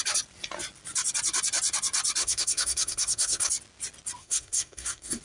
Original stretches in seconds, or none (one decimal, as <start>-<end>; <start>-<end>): 0.0-2.2; 3.5-4.2